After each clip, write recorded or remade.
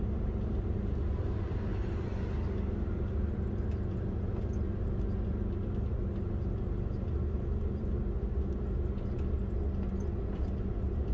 recorded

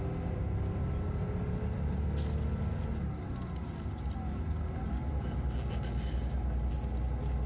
recorded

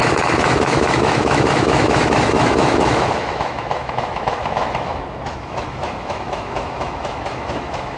remade